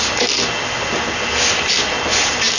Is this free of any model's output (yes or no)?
yes